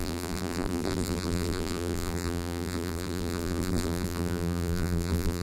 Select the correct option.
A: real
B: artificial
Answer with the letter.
B